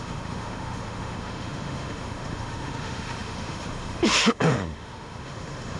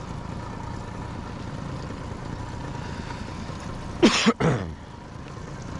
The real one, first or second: second